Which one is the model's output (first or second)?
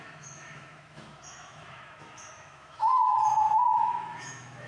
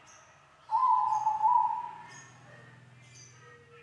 first